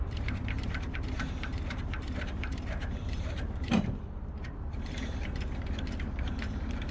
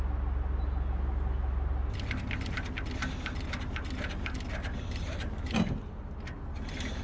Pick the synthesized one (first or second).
first